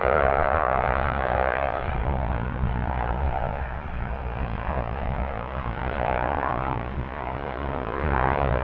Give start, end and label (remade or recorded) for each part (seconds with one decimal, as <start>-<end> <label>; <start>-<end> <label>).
0.0-8.6 remade